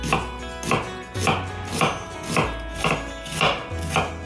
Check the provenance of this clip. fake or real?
real